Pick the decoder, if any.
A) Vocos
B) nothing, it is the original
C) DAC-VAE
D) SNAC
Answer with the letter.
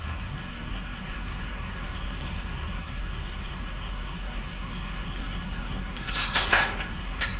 D